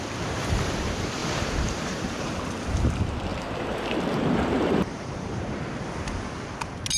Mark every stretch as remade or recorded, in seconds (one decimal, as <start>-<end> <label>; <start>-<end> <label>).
0.0-1.2 recorded; 1.2-2.4 remade; 2.4-3.3 recorded; 3.3-5.7 remade; 5.7-7.0 recorded